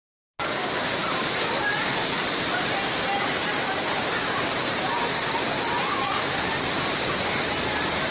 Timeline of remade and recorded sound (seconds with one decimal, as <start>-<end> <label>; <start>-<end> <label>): 0.0-1.0 recorded; 1.0-4.3 remade; 4.3-5.1 recorded; 5.1-6.6 remade; 6.6-8.1 recorded